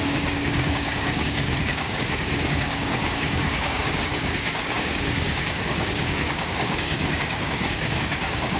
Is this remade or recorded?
remade